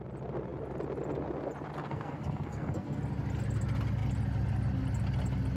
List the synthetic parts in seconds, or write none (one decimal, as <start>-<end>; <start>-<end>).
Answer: 1.8-3.0

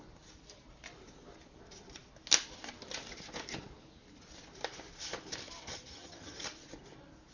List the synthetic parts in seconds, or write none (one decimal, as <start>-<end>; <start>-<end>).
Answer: 5.9-6.4